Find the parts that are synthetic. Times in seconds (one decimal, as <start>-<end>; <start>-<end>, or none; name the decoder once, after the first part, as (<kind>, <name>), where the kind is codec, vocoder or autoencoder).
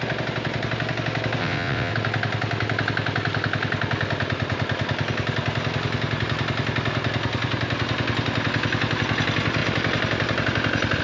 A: 1.4-1.9 (vocoder, WaveNeXt)